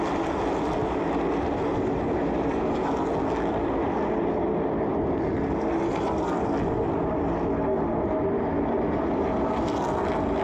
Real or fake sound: real